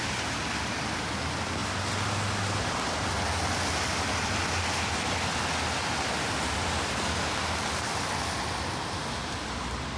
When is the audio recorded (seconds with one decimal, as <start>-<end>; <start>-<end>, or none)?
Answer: 0.0-10.0